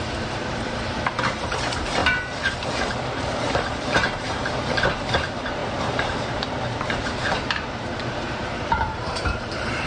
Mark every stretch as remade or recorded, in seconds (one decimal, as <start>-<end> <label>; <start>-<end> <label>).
0.0-9.9 remade